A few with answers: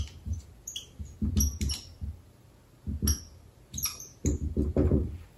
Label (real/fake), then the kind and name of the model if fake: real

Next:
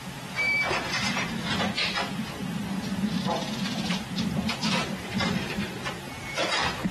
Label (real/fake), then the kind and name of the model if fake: fake, vocoder, BigVGAN v2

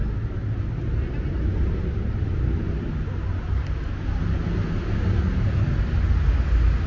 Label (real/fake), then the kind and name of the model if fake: real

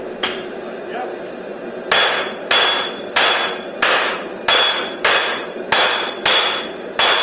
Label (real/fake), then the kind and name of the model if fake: real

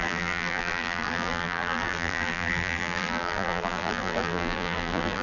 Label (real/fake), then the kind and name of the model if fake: fake, vocoder, BigVGAN v2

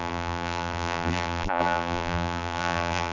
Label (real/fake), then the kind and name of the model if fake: fake, vocoder, BigVGAN v2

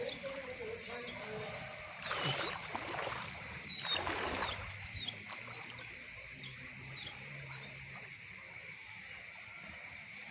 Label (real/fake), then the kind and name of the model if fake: fake, vocoder, BigVGAN v2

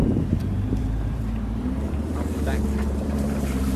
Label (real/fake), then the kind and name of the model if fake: fake, vocoder, BigVGAN v2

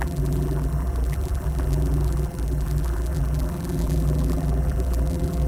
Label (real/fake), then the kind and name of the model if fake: fake, vocoder, BigVGAN v2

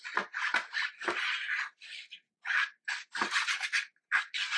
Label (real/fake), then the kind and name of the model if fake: fake, vocoder, BigVGAN v2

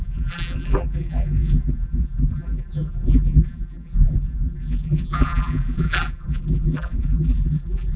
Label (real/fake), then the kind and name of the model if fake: fake, vocoder, BigVGAN v2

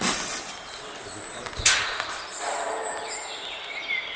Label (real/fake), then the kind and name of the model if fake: real